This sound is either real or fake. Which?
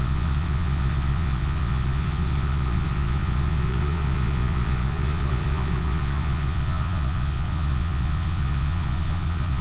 fake